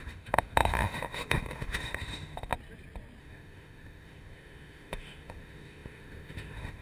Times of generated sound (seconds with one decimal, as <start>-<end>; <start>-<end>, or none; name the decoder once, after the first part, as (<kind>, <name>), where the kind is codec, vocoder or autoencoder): 0.0-2.5 (autoencoder, DAC-VAE); 3.2-6.8